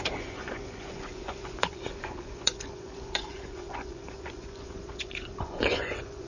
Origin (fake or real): fake